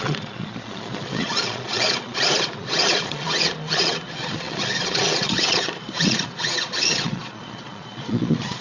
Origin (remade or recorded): remade